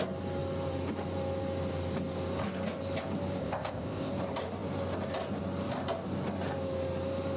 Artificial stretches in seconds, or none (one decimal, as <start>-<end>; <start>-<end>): 3.4-4.1